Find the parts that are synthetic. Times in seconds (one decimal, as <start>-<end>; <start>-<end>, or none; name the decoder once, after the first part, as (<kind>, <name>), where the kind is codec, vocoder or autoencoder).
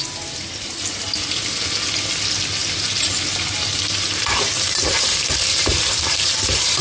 2.6-6.8 (vocoder, BigVGAN v2)